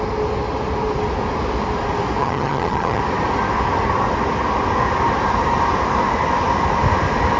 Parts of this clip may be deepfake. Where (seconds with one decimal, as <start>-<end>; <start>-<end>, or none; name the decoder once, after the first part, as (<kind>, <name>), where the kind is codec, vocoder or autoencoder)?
2.2-3.0 (vocoder, HiFi-GAN)